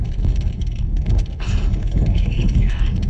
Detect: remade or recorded remade